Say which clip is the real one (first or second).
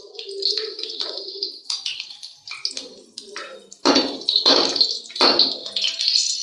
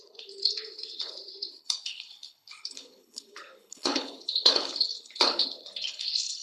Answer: first